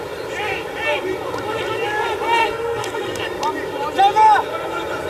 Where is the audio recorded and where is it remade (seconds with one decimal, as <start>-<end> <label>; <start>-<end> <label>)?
0.0-2.4 recorded; 2.4-3.2 remade; 3.2-5.1 recorded